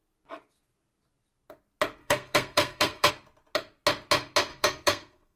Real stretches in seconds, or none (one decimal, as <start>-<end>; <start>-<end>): 0.0-2.0; 3.1-4.5